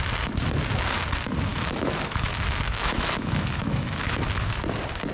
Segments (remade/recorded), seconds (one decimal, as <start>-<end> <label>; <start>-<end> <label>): 0.0-1.5 recorded; 1.5-4.6 remade; 4.6-5.1 recorded